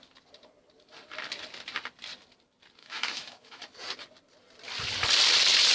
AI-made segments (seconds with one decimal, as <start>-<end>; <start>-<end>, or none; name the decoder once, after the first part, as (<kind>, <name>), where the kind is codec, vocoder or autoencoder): 2.8-3.6 (autoencoder, DAC-VAE)